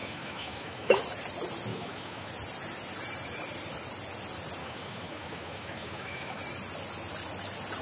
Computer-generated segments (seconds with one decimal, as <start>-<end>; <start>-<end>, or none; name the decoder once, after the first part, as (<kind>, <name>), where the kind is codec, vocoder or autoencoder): 0.0-1.0 (autoencoder, DAC-VAE); 1.7-2.3; 4.6-6.4